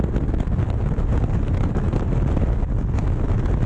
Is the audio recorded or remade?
recorded